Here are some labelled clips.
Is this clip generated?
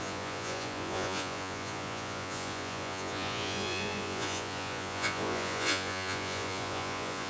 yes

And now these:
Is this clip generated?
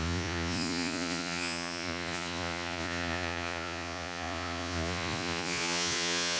yes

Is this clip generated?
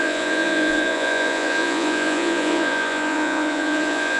yes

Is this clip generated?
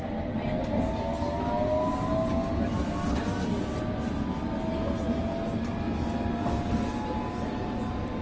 no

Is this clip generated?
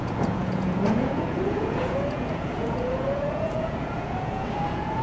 yes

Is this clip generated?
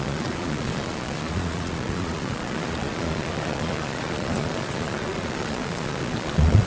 yes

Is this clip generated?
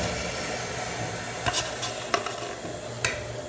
no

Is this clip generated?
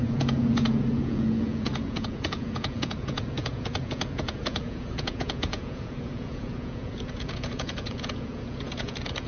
yes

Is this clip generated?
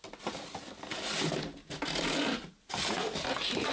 no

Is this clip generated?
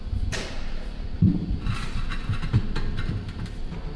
no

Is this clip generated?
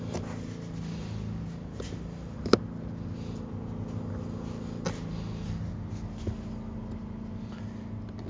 no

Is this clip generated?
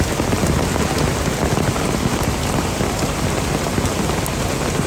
no